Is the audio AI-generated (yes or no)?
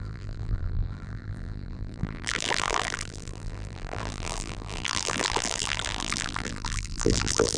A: yes